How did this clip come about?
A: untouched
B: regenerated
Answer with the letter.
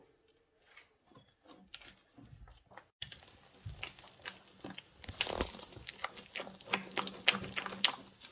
A